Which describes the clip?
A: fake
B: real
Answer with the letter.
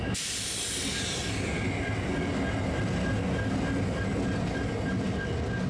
B